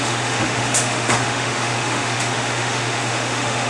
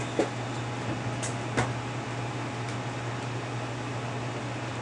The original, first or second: second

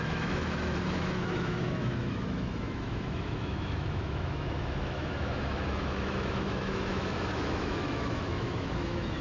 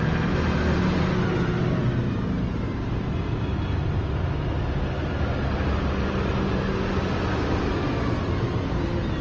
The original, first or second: second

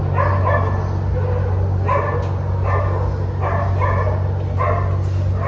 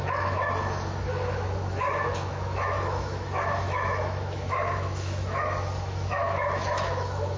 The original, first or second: first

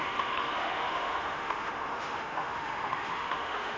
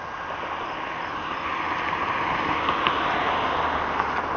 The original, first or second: second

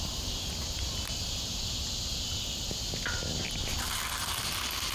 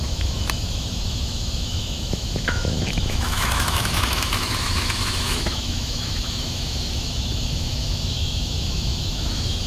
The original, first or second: first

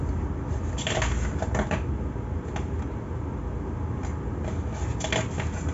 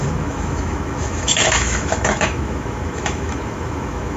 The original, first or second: first